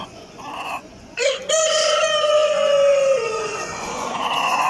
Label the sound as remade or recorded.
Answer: remade